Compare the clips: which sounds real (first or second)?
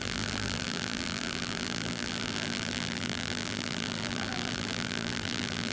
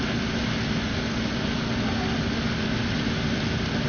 second